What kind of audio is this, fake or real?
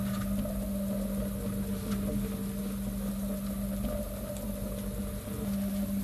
real